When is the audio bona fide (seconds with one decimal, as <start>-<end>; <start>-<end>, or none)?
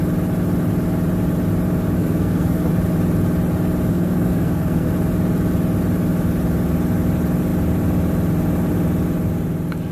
0.0-2.0; 2.7-3.9; 4.9-9.9